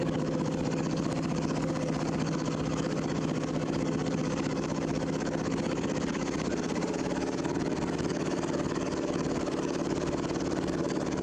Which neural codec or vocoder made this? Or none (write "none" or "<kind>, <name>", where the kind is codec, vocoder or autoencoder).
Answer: codec, DAC